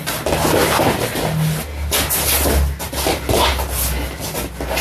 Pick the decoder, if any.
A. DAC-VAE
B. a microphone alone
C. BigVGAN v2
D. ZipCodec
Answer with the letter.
B